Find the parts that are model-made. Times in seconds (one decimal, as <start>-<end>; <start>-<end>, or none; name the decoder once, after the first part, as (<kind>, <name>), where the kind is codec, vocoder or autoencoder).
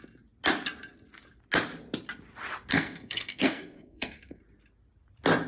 2.7-4.4 (codec, SNAC)